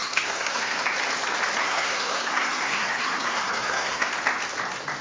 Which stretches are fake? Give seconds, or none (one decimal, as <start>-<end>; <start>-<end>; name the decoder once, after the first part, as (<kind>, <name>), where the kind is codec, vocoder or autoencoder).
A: 0.0-0.8 (codec, SNAC); 1.6-4.1